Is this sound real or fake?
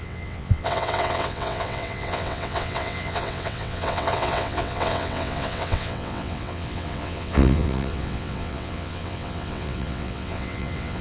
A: fake